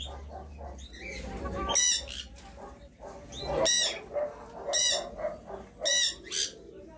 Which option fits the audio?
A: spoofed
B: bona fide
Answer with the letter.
B